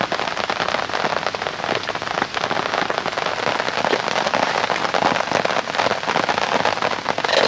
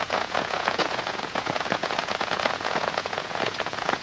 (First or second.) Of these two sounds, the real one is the first